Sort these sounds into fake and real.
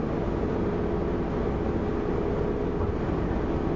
real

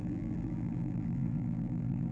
fake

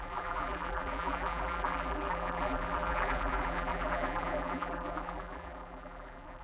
fake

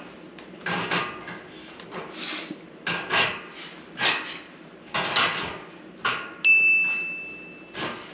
real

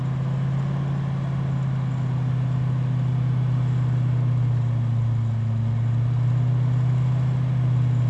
real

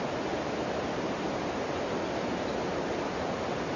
real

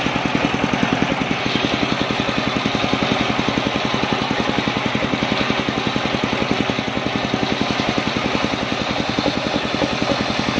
real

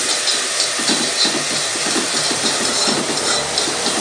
real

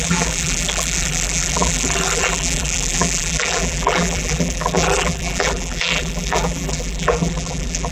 fake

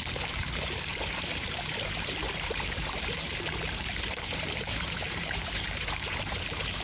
fake